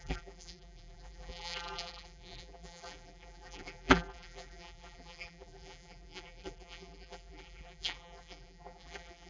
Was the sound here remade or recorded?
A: remade